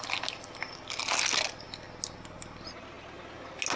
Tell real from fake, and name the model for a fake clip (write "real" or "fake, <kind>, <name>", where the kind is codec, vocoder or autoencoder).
real